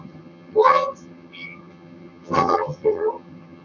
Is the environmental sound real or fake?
fake